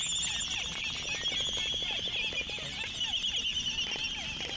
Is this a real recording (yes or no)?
yes